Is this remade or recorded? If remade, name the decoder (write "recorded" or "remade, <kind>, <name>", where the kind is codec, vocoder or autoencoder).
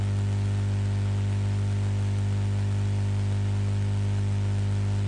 recorded